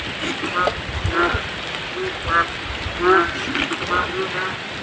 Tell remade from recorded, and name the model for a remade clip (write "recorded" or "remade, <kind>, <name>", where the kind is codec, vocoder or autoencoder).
recorded